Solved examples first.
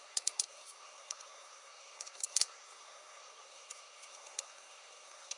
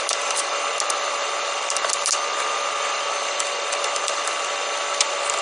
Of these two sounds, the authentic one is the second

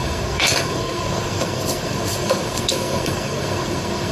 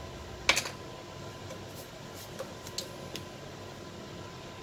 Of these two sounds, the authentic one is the second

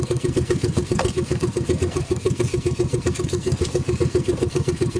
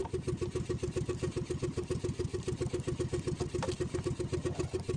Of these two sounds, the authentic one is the second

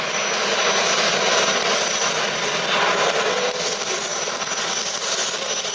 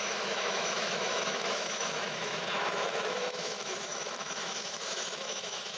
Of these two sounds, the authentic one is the first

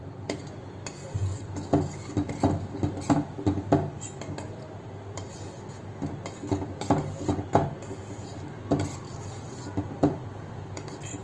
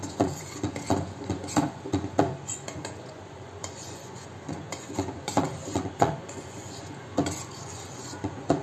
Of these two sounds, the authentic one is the first